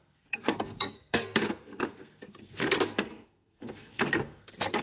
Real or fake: fake